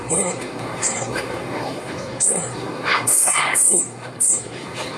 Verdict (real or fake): fake